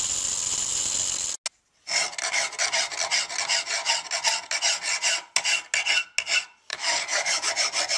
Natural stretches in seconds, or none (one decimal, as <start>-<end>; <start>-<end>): 0.0-6.7; 7.5-8.0